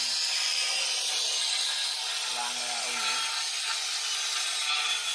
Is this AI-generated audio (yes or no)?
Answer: no